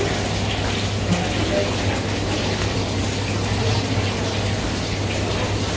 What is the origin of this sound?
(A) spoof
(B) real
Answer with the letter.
B